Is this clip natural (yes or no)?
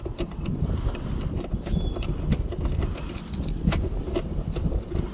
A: yes